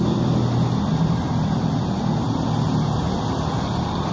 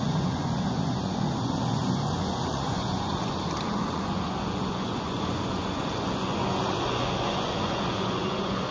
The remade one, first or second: second